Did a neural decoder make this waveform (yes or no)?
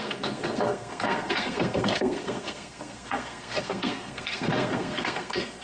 yes